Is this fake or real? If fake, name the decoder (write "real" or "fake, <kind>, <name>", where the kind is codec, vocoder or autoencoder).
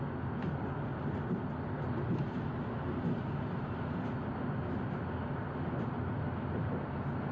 real